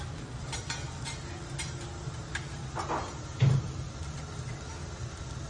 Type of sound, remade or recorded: recorded